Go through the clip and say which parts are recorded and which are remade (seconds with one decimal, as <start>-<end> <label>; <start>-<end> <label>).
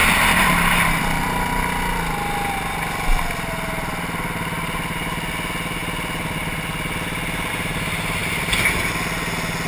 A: 0.0-1.0 remade; 1.0-8.2 recorded; 8.2-8.8 remade; 8.8-9.7 recorded